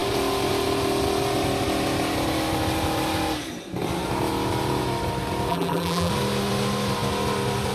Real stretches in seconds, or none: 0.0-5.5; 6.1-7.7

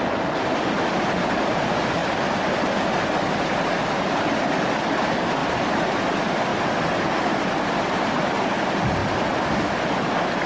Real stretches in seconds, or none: none

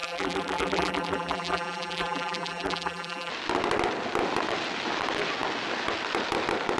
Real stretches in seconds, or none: 3.3-6.8

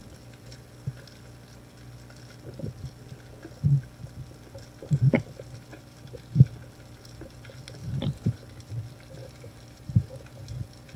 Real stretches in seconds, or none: 0.0-5.7; 6.5-7.8; 8.4-9.2; 10.5-11.0

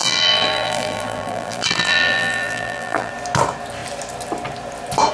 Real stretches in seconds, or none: 3.1-5.1

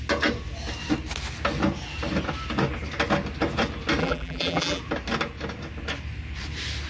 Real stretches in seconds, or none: 0.0-4.0; 4.8-6.9

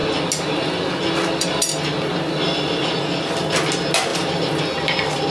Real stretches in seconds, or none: 0.0-4.1; 4.6-5.3